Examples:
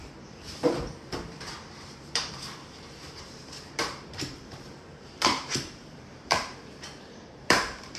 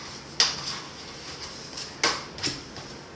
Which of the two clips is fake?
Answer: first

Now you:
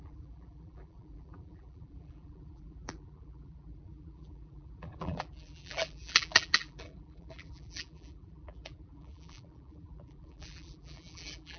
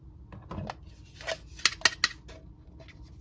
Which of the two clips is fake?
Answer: first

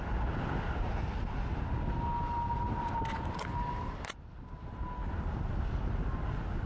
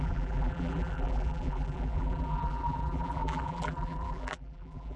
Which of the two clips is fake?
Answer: second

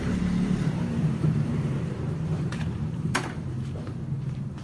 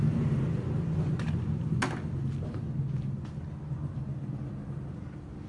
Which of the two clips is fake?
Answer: first